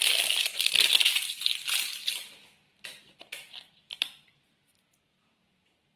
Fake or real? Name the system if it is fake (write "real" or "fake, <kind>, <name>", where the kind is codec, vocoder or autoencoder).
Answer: real